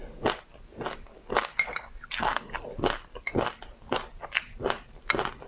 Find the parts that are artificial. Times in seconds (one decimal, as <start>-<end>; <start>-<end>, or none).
none